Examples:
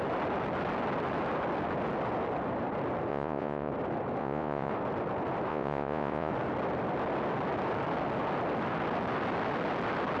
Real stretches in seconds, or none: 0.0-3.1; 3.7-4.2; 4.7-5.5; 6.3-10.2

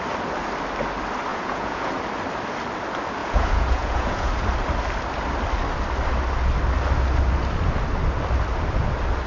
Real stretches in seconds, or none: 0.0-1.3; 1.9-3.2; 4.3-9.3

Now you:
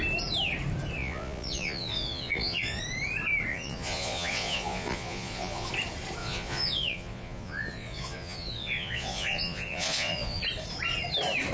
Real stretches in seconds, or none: 0.0-1.0; 2.8-3.5; 5.7-6.2; 10.4-11.5

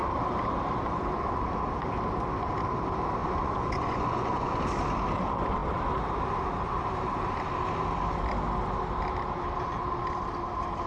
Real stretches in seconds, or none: 0.0-3.2; 4.6-10.9

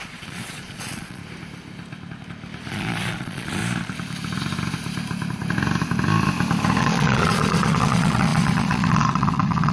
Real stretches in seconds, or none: 1.2-2.7; 3.6-6.8

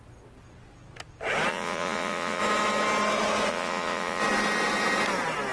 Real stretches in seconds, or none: 0.0-1.5; 2.4-3.5; 4.2-5.5

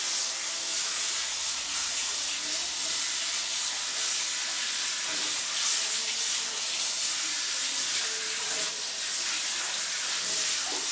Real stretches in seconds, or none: 0.0-0.7; 2.4-10.9

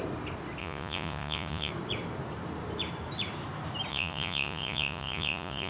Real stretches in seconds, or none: 0.0-0.6; 1.7-3.9